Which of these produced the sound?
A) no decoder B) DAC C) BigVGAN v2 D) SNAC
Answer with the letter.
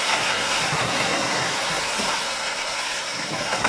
D